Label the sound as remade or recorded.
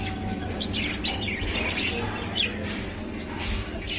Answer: recorded